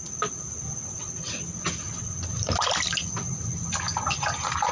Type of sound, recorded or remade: recorded